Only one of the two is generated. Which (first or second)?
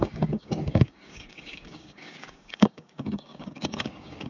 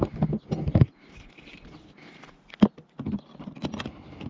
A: first